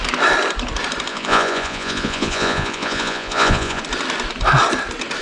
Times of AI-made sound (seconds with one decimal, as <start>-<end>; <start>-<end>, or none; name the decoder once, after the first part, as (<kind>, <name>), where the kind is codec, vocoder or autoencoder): 1.1-3.8 (vocoder, Vocos)